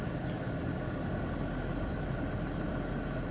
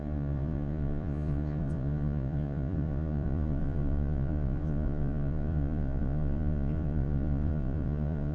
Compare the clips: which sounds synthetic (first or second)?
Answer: second